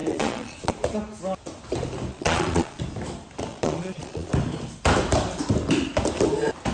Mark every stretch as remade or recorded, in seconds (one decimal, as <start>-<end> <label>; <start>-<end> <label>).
0.0-0.7 remade; 0.7-2.1 recorded; 2.1-2.8 remade; 2.8-3.5 recorded; 3.5-4.3 remade; 4.3-6.7 recorded